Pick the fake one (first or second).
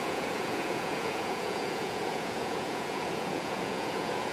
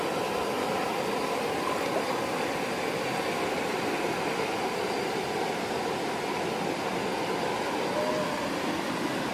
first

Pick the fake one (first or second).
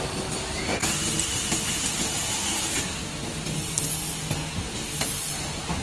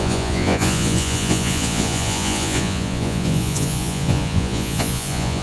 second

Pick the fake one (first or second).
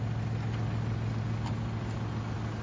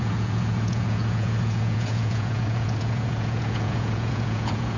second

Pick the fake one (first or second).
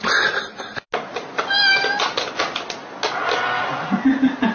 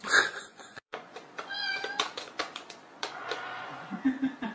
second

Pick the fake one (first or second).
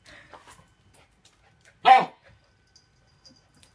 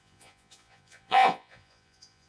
second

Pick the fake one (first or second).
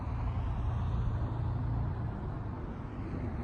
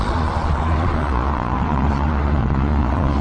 second